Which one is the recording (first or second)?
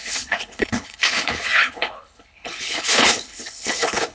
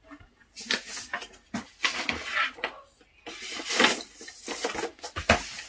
second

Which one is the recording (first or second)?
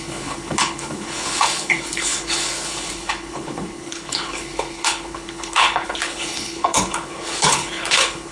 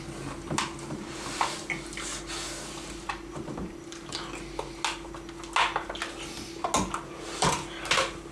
second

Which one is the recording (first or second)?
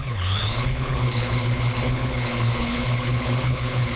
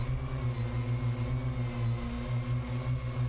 second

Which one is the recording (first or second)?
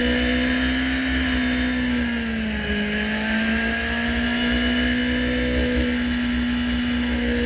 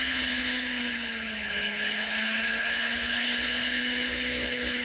first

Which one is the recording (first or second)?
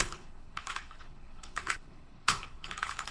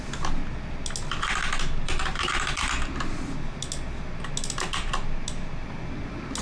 second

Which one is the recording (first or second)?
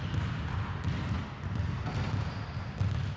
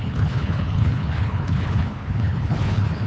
first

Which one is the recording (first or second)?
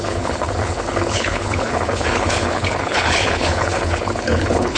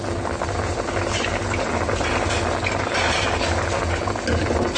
second